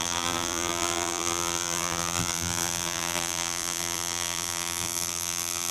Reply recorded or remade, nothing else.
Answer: remade